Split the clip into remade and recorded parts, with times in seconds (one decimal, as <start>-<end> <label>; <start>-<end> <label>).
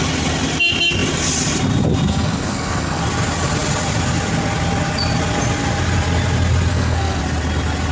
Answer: 0.0-2.1 recorded; 2.1-3.0 remade; 3.0-6.7 recorded; 6.7-7.2 remade; 7.2-7.9 recorded